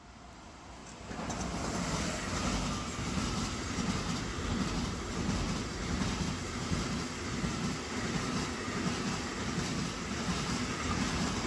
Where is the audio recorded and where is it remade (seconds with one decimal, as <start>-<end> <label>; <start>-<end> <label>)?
0.0-11.5 recorded